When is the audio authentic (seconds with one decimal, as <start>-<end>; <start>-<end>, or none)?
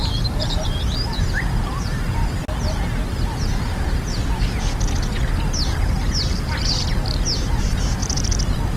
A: 1.3-8.8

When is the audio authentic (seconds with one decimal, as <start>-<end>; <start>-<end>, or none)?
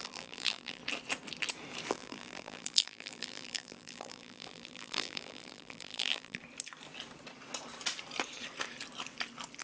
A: 0.8-1.9; 6.4-9.6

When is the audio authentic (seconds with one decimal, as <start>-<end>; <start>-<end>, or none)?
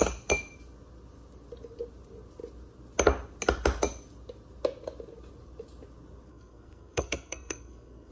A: 0.0-6.3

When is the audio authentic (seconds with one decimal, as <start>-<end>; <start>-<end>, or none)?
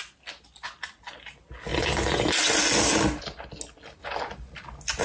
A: 0.0-1.7; 2.5-5.0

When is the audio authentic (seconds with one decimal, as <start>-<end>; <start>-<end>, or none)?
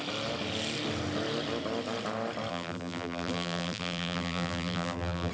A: 0.0-2.5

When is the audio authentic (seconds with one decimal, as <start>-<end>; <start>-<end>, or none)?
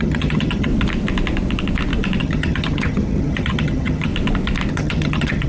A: 0.7-2.2; 4.1-4.7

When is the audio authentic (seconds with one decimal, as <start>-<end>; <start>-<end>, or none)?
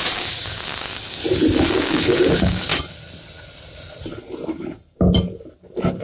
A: 1.2-1.7; 2.7-6.0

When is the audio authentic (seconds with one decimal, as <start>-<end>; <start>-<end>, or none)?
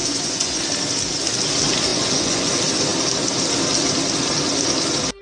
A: 0.6-1.9; 2.5-5.2